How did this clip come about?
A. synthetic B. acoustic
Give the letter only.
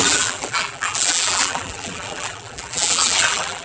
A